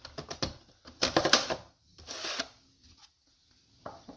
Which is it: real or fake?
real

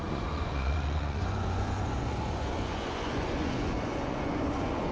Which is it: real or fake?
fake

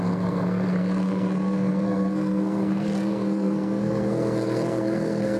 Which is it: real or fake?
fake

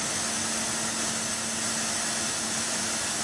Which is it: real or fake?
real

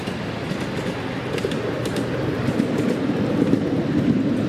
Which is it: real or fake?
real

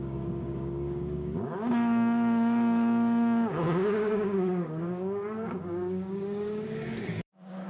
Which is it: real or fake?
fake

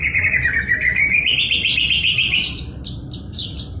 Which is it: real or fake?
fake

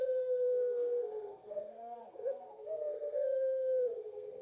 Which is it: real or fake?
fake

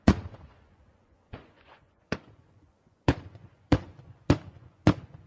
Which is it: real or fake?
fake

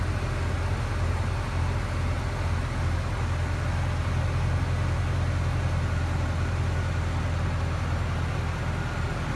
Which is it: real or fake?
real